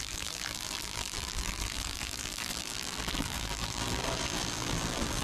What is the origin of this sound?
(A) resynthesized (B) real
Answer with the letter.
A